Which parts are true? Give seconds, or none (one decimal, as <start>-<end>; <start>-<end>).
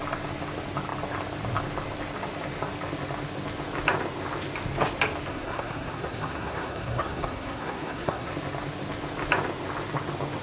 0.0-5.3; 8.3-10.4